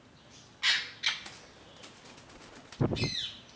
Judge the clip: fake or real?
real